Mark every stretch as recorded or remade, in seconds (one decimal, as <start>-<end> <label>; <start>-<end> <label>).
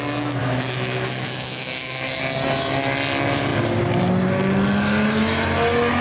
0.0-0.4 recorded; 0.4-2.2 remade; 2.2-6.0 recorded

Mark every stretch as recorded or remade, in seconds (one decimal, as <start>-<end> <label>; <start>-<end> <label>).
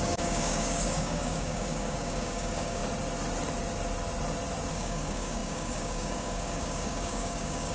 0.0-2.8 remade; 2.8-4.7 recorded; 4.7-7.7 remade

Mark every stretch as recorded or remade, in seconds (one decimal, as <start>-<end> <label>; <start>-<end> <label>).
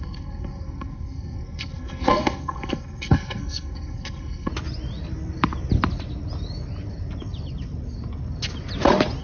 0.0-4.5 remade; 4.5-9.2 recorded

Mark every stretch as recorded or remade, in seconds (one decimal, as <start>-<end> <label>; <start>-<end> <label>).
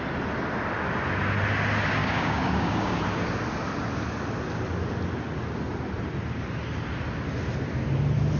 0.0-2.0 recorded; 2.0-3.0 remade; 3.0-8.4 recorded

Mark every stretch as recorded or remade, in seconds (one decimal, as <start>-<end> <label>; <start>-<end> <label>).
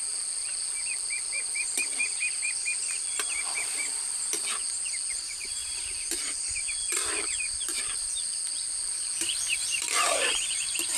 0.0-11.0 remade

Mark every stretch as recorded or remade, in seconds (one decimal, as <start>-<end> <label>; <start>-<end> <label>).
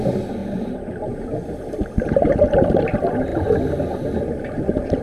0.0-5.0 recorded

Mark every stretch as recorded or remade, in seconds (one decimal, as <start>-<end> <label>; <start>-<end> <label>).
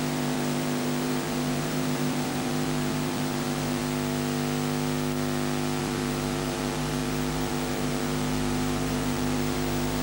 0.0-3.8 remade; 3.8-5.8 recorded; 5.8-10.0 remade